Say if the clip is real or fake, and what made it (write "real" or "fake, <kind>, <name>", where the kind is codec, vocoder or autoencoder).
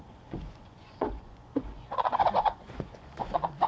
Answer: fake, vocoder, Vocos